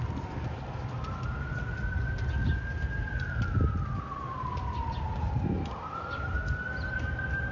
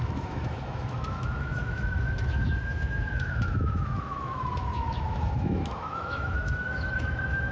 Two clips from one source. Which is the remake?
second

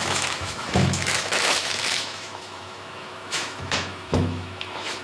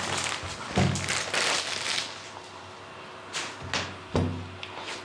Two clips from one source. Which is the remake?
first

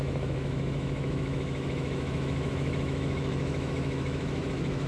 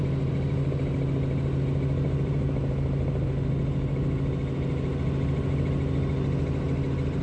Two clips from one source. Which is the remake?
first